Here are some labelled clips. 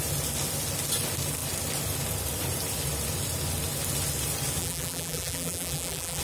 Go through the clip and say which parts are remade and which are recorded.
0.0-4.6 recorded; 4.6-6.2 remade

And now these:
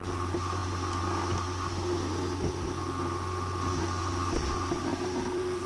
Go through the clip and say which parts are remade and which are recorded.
0.0-5.7 recorded

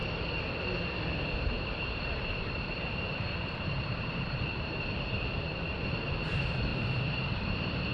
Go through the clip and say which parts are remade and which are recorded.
0.0-1.2 recorded; 1.2-7.9 remade